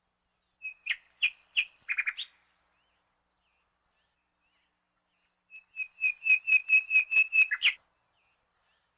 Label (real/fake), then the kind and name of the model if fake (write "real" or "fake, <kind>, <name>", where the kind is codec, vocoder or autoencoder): real